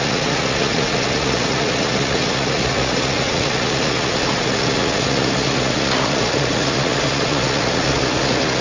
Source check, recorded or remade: remade